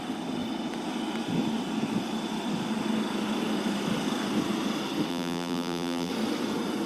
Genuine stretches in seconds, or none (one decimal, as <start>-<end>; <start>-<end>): 0.0-5.1; 6.1-6.9